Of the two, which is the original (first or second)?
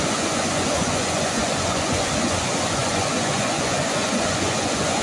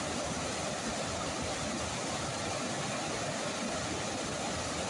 second